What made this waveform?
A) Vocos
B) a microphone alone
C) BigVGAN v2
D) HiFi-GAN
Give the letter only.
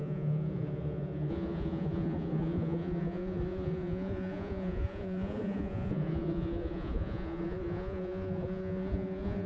A